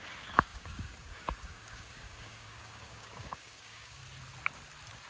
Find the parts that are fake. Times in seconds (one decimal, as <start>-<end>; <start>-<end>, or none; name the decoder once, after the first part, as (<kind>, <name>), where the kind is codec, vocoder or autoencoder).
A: 0.0-4.0 (codec, DAC)